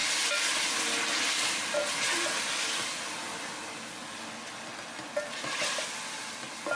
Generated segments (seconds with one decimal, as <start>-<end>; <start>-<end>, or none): none